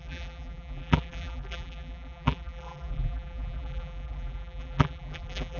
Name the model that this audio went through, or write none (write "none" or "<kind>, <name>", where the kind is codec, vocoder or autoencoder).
vocoder, BigVGAN v2